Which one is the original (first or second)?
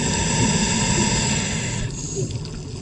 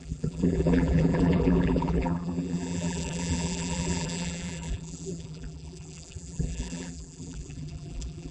first